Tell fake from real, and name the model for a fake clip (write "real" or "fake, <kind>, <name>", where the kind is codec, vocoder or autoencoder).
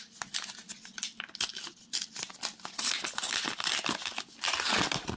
real